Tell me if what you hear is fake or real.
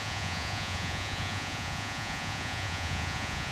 fake